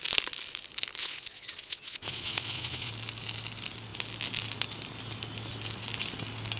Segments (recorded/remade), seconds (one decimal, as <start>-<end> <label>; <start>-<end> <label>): 0.0-1.0 recorded; 1.0-2.9 remade; 2.9-6.6 recorded